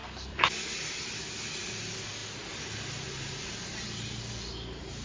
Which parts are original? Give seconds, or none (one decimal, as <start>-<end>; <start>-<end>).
0.7-2.2; 4.2-5.0